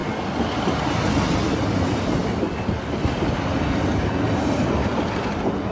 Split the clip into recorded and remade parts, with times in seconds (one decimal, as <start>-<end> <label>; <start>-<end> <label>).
0.0-5.7 recorded